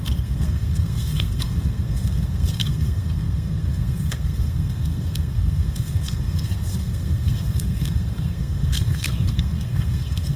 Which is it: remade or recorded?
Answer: remade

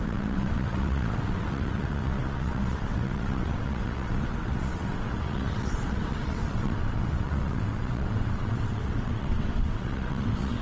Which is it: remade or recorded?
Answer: remade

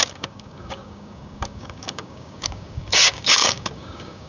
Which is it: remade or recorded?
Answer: remade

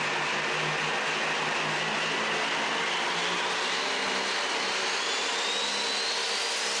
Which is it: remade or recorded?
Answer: recorded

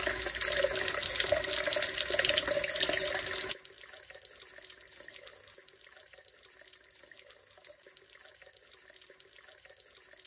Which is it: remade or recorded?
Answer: recorded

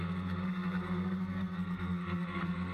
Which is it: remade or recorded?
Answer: remade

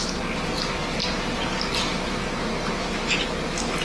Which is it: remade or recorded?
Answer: recorded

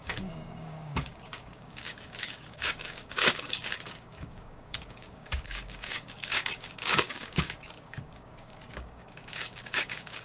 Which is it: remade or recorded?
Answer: remade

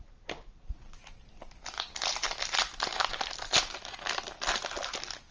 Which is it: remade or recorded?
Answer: recorded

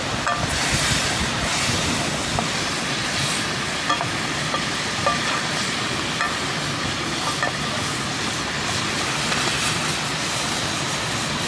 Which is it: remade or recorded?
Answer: recorded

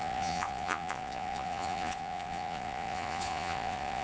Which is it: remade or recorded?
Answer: remade